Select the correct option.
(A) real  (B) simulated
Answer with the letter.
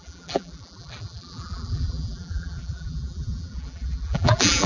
B